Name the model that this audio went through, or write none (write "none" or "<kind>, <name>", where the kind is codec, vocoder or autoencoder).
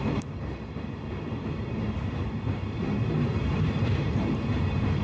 vocoder, BigVGAN v2